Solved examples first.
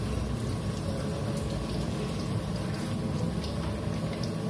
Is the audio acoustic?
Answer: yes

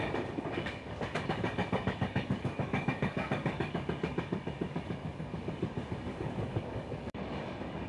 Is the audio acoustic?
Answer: no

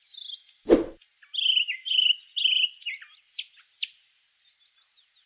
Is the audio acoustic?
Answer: yes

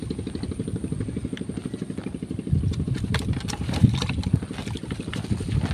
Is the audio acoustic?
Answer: yes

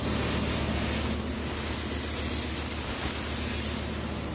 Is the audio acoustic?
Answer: yes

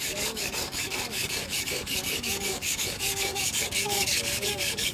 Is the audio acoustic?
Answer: no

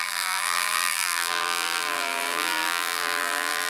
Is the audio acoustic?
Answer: no